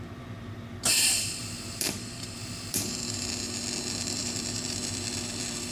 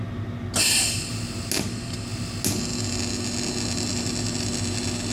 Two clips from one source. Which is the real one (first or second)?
second